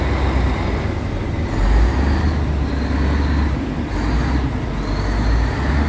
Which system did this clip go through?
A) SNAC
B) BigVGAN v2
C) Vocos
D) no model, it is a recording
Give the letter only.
D